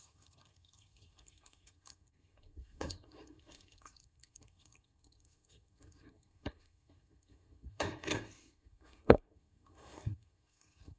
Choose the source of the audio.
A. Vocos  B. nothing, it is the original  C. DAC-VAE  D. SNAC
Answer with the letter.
D